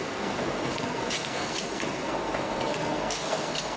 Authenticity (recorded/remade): remade